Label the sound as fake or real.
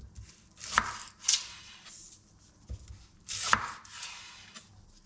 real